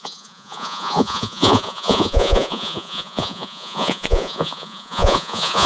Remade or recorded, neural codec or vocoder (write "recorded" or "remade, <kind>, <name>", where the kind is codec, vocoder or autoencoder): remade, vocoder, Vocos